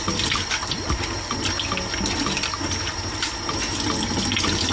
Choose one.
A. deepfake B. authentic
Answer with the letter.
B